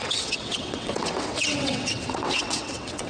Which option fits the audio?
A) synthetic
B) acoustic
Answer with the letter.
A